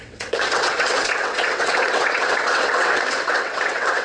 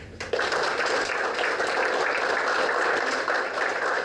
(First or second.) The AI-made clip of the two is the first